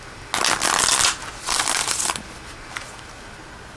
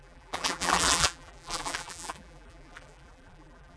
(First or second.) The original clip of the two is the first